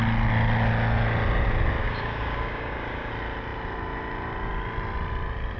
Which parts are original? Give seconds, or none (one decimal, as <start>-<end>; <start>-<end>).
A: 0.0-1.8; 3.1-5.6